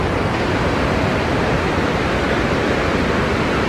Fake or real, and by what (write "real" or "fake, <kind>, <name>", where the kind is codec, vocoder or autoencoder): real